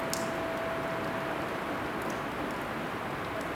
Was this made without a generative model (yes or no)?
yes